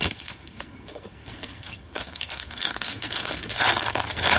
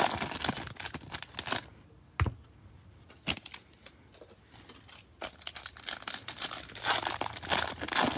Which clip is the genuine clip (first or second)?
second